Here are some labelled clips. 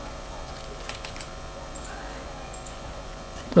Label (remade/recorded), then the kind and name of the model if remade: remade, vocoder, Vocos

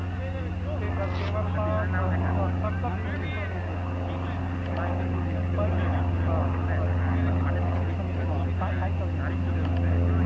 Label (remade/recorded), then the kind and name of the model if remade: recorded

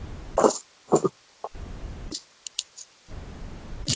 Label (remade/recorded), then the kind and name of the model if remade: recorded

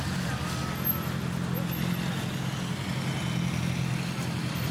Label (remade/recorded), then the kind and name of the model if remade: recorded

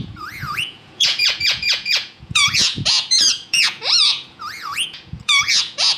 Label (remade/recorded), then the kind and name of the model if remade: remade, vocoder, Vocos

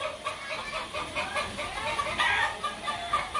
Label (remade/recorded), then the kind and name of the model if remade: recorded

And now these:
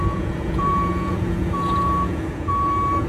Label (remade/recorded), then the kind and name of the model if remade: remade, vocoder, Vocos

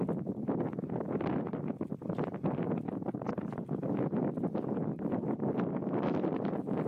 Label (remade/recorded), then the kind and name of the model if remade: recorded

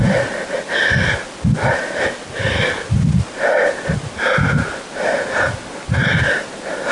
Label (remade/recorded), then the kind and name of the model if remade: recorded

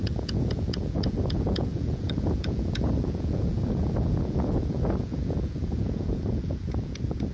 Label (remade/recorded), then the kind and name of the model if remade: remade, vocoder, Vocos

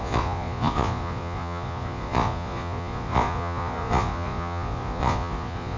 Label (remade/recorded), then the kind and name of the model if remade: remade, vocoder, Vocos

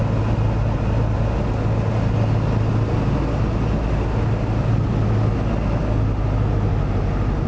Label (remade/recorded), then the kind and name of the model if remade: recorded